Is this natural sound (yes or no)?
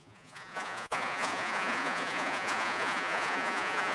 no